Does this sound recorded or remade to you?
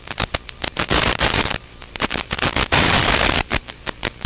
remade